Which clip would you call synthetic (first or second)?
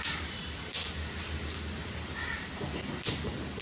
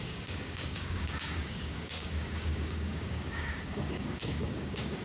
second